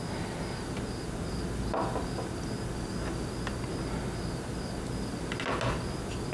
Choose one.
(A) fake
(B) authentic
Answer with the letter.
B